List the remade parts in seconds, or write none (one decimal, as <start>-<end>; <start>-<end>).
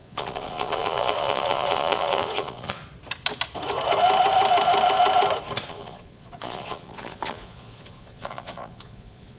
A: 0.0-2.8; 5.7-9.4